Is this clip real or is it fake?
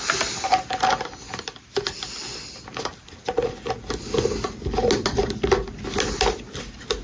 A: real